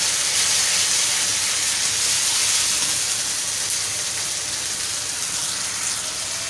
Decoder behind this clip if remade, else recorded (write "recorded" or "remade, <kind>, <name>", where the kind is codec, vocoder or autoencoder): recorded